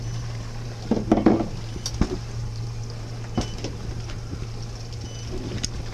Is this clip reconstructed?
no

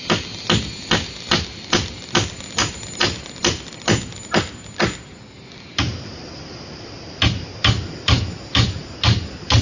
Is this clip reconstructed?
no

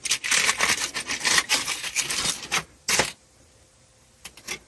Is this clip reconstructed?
no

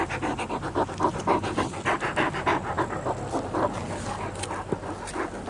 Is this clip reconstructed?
no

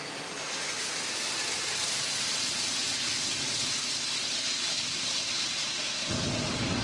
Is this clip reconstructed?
no